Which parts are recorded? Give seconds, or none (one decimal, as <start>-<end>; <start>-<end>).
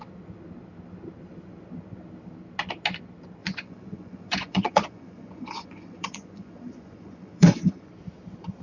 0.0-3.4; 7.9-8.6